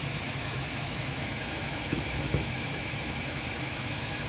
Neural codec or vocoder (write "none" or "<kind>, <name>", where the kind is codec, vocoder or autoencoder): autoencoder, DAC-VAE